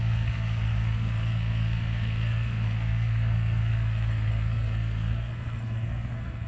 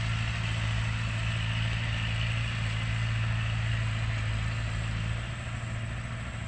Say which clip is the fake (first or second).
first